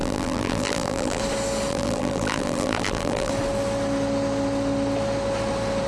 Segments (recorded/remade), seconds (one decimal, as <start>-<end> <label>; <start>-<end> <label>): 0.0-1.2 remade; 1.2-1.7 recorded; 1.7-3.3 remade; 3.3-5.9 recorded